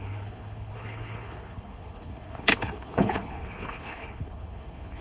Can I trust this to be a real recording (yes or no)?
no